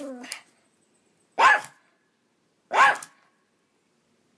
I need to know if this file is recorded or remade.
recorded